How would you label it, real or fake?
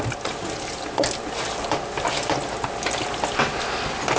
real